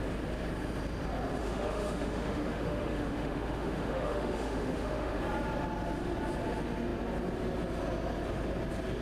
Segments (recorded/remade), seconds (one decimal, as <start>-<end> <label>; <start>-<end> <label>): 0.0-1.4 recorded; 1.4-5.2 remade; 5.2-9.0 recorded